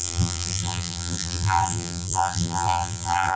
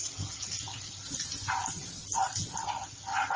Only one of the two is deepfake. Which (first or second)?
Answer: first